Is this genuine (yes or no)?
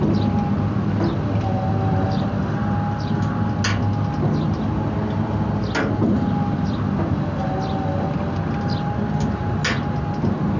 yes